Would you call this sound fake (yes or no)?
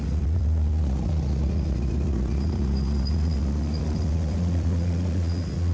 yes